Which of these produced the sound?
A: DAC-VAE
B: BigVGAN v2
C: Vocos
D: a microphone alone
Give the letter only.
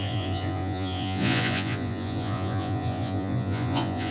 C